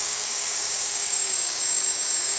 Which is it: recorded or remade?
remade